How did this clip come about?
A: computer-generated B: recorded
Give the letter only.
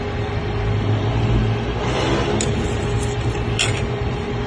B